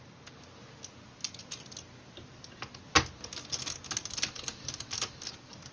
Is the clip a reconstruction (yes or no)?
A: no